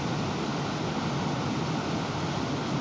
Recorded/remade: recorded